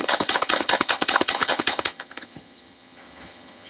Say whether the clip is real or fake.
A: fake